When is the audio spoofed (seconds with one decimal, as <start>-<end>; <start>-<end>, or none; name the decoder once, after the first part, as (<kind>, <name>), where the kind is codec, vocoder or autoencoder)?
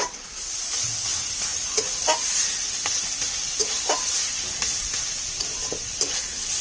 none